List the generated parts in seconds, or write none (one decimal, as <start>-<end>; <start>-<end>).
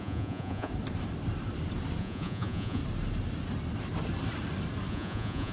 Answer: 0.0-0.7; 2.0-2.8; 4.9-5.5